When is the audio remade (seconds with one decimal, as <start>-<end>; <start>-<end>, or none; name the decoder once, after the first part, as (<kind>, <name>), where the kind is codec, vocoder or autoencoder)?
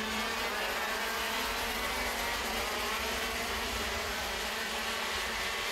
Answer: none